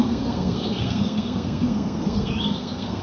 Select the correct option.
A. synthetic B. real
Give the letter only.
A